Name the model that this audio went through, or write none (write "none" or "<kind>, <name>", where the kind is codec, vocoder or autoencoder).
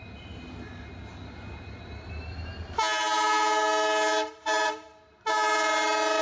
none